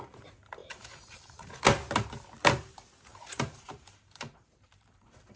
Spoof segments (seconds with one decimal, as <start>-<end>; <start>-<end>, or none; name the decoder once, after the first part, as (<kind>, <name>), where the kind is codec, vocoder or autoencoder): 0.6-1.5 (vocoder, BigVGAN v2); 3.1-5.4